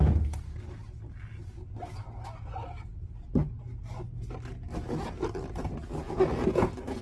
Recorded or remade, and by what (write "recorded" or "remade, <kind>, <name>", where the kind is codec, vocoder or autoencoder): recorded